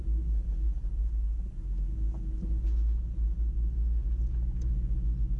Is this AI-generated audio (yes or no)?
no